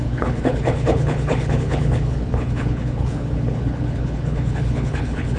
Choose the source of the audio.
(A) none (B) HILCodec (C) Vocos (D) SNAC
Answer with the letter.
B